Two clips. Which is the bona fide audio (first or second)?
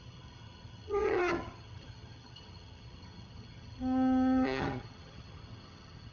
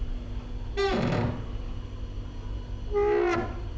second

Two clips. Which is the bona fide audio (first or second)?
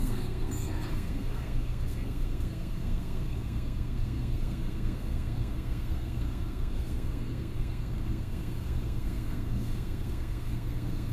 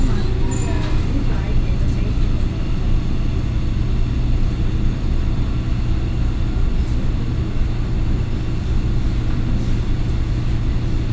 second